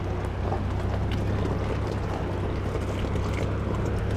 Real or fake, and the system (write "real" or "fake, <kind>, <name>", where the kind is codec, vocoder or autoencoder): real